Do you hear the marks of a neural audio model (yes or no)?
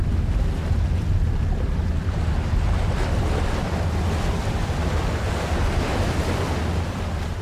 no